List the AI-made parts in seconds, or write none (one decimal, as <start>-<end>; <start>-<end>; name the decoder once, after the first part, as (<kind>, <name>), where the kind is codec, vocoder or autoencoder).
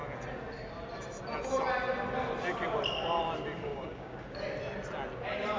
3.7-4.2 (codec, DAC)